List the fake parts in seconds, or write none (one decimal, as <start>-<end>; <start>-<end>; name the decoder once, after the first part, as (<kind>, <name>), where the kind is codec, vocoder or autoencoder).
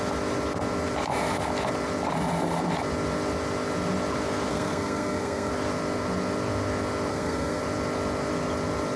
4.5-5.5 (codec, SNAC); 7.1-7.6